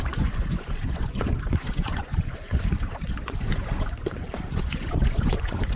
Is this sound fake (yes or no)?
yes